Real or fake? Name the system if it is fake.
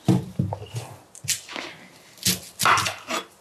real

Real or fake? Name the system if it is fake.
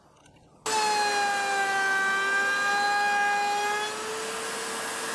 real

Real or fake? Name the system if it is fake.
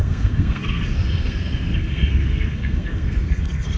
fake, codec, SNAC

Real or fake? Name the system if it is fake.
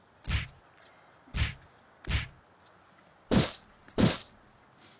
real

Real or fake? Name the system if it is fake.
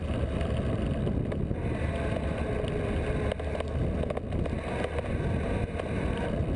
real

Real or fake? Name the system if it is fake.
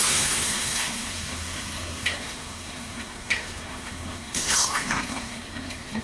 fake, codec, SNAC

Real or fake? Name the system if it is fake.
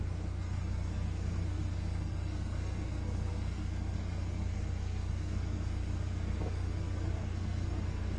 fake, codec, SNAC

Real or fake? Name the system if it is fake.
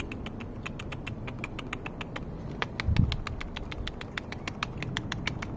real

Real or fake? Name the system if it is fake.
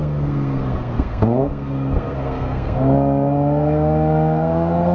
fake, codec, SNAC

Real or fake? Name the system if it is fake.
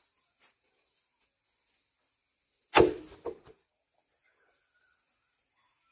real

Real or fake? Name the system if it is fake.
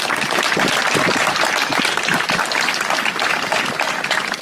real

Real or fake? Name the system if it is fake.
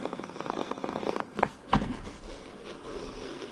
fake, codec, SNAC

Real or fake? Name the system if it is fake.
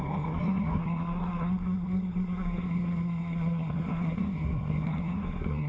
fake, codec, SNAC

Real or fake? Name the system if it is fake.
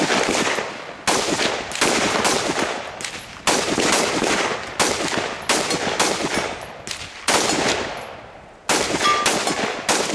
real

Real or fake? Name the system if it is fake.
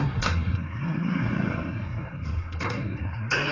fake, codec, SNAC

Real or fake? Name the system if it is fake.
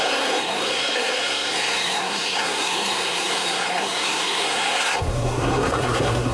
fake, codec, SNAC